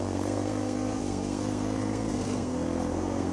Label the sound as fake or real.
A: fake